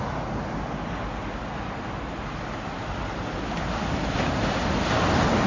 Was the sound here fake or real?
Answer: real